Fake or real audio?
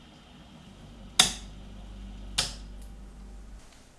real